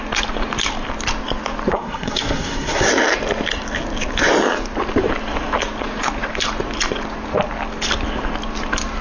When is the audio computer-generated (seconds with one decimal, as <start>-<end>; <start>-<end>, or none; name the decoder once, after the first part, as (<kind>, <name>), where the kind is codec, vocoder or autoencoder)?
1.7-2.9 (codec, SNAC)